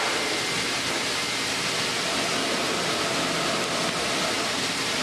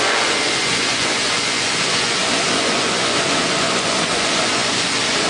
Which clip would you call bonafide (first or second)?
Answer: first